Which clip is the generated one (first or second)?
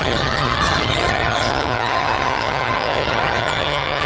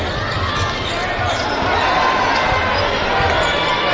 first